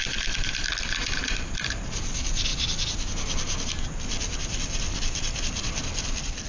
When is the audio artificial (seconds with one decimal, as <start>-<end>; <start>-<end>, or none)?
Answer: none